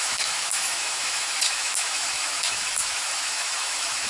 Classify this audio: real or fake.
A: fake